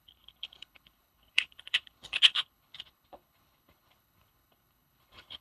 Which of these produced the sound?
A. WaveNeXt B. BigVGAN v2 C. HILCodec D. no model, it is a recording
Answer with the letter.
C